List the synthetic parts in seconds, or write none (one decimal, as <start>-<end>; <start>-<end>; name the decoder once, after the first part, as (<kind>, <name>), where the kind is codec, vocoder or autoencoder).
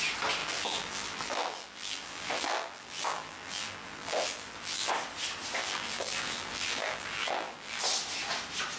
0.4-4.9 (vocoder, BigVGAN v2); 5.6-7.8